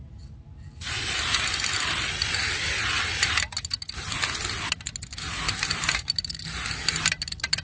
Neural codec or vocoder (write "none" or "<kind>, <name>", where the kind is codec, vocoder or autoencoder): none